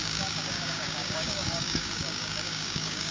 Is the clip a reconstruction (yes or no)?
yes